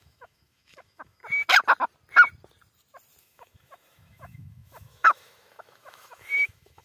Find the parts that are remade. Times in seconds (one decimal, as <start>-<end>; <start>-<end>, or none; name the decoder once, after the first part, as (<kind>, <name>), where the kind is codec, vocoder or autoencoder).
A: 0.0-1.2 (autoencoder, DAC-VAE); 3.2-6.8